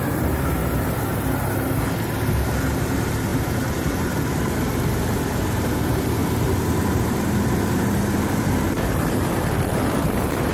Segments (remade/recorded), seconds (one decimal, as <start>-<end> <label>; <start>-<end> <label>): 0.0-0.6 remade; 0.6-1.9 recorded; 1.9-6.2 remade; 6.2-6.9 recorded; 6.9-10.5 remade